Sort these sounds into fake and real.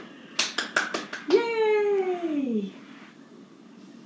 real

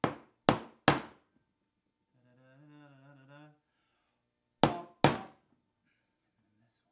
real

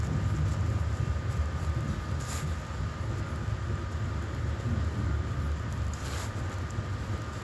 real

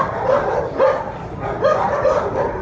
fake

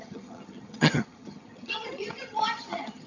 fake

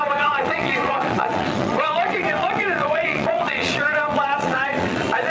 fake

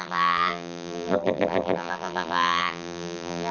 fake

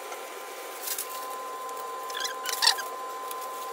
real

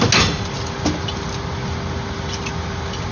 real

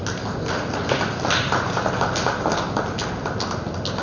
real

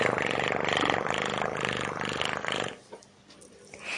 real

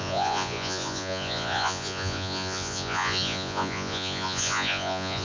fake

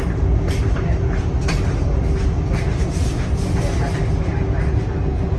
real